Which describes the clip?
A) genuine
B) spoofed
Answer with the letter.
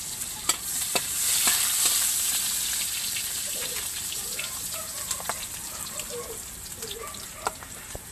B